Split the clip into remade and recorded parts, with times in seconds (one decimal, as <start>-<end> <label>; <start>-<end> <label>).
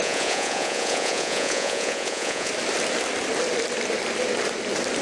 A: 0.0-2.5 remade; 2.5-5.0 recorded